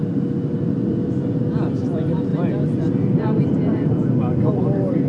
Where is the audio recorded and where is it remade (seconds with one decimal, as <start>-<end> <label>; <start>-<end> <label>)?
0.0-5.1 recorded